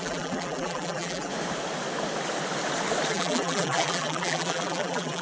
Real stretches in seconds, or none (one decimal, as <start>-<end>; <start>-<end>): 1.3-3.1